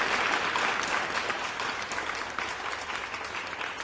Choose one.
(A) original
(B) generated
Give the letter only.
A